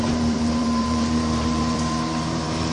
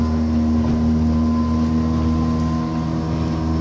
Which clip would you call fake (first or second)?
first